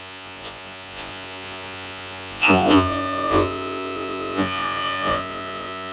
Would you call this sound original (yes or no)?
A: no